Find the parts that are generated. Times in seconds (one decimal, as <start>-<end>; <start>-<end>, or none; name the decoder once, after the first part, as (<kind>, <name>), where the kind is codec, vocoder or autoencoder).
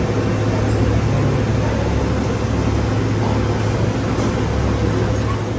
none